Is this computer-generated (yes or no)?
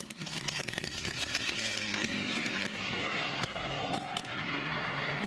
yes